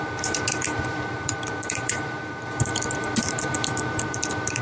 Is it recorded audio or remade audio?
remade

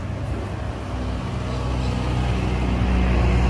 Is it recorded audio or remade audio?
recorded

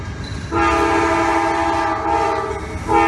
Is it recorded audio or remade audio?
recorded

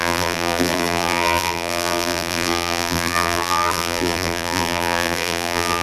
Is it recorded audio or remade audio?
remade